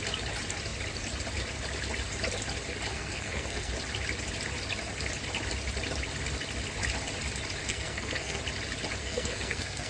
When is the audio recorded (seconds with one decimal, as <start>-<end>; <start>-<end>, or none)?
0.0-2.9; 3.7-7.6; 8.4-9.0